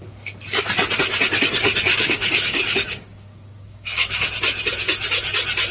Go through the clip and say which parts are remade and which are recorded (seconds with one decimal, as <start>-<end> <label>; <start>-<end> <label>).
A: 0.0-1.9 recorded; 1.9-4.3 remade; 4.3-5.7 recorded